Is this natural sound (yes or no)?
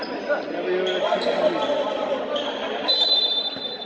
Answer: yes